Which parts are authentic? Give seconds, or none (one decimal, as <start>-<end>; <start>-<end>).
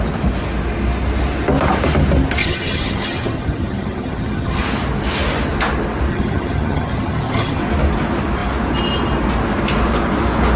0.0-2.4; 4.6-6.1; 7.6-10.6